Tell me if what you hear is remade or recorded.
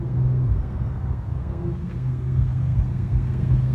remade